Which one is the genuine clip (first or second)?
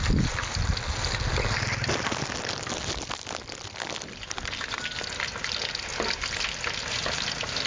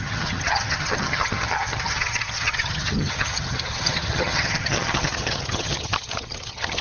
first